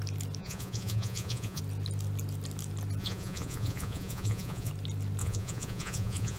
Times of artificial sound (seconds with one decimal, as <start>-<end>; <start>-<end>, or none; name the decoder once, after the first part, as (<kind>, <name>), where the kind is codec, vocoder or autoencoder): 0.4-1.6 (vocoder, Vocos); 3.0-4.7; 5.2-6.4